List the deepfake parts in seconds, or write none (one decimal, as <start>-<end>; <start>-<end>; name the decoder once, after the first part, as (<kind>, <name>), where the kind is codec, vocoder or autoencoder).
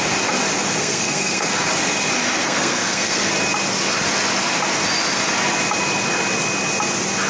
0.8-1.5 (codec, SNAC); 2.4-3.3